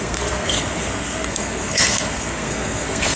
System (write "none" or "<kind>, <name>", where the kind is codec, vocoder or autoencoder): codec, SNAC